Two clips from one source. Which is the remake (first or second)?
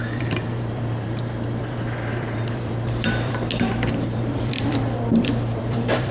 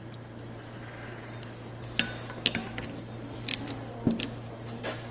first